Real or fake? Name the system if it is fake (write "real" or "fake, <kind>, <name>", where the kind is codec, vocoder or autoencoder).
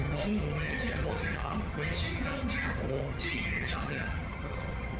fake, vocoder, HiFi-GAN